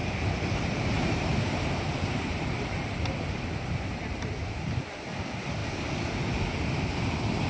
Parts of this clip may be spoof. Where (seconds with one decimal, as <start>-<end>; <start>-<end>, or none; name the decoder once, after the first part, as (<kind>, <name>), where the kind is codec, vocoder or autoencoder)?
0.0-4.3 (vocoder, BigVGAN v2)